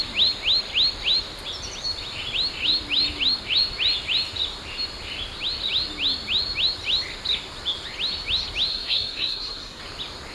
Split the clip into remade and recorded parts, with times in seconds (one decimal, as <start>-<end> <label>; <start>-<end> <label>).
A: 0.0-8.7 recorded; 8.7-9.8 remade; 9.8-10.3 recorded